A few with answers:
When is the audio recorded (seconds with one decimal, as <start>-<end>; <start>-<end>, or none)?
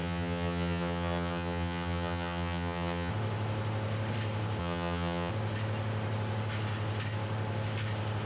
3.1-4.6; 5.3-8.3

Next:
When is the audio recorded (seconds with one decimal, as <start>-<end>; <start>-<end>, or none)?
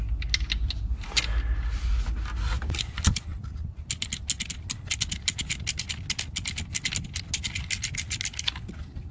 0.0-9.1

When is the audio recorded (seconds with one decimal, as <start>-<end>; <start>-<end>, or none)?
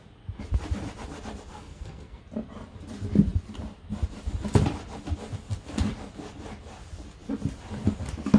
0.0-1.5; 2.2-8.4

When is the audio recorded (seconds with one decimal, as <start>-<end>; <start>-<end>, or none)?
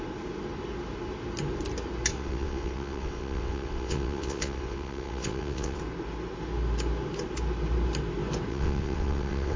0.0-2.1; 5.8-8.5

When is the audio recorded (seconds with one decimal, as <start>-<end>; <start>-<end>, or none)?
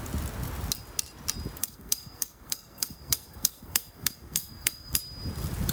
0.0-1.6; 5.0-5.7